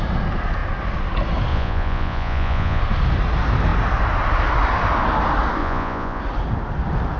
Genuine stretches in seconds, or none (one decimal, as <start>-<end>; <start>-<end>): 0.0-1.5; 2.8-5.6; 6.2-7.2